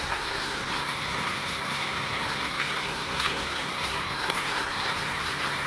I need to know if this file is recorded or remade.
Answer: remade